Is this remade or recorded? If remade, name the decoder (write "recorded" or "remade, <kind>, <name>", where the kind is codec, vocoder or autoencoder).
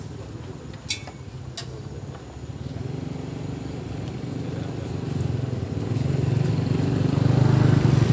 recorded